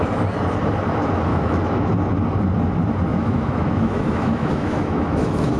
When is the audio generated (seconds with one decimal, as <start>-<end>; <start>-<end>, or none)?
1.3-1.9; 3.1-5.6